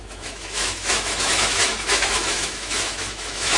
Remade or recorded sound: remade